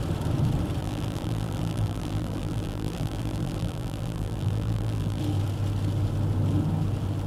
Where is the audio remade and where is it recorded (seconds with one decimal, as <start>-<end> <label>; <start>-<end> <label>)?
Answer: 0.0-0.8 recorded; 0.8-5.2 remade; 5.2-7.3 recorded